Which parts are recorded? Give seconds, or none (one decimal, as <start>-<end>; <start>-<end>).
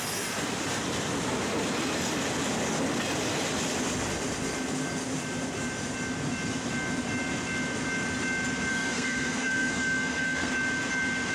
0.0-8.7; 10.5-11.3